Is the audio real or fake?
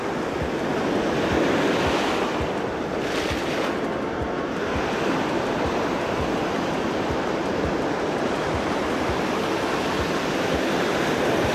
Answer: real